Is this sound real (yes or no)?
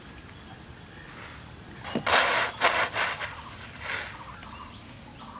yes